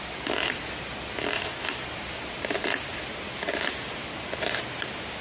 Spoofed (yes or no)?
no